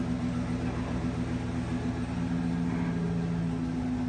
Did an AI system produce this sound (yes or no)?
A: no